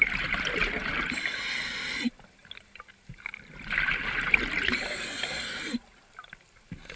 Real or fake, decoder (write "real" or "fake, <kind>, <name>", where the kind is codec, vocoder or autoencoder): real